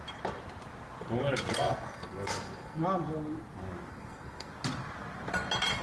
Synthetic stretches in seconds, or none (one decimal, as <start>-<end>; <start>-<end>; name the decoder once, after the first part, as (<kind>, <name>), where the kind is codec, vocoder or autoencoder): 1.5-2.8 (codec, SNAC); 3.9-4.5